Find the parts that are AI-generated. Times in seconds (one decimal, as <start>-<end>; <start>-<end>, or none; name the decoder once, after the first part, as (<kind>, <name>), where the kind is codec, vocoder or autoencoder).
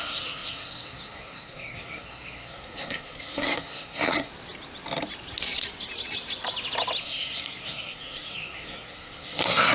0.0-4.3 (codec, SNAC); 7.0-9.7